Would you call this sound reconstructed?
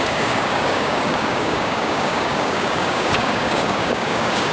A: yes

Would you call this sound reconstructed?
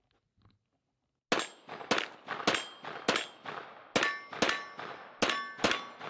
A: no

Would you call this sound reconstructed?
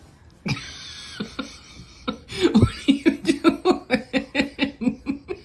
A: no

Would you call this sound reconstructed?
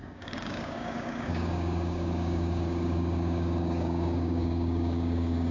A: yes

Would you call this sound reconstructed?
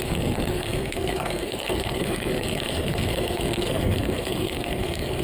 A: yes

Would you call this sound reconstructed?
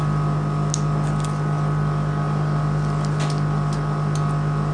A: no